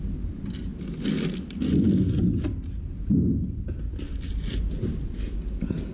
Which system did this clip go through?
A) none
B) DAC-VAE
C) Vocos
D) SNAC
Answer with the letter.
A